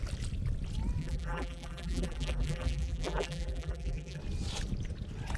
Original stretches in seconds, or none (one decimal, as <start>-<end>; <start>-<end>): 0.0-1.0; 4.2-5.4